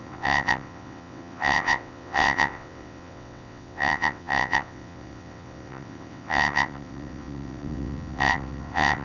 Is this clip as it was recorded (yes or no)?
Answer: no